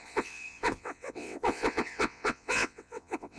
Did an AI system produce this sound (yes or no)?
yes